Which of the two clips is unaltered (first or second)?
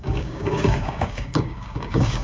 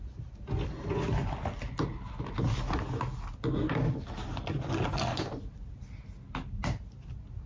second